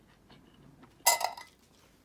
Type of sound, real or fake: real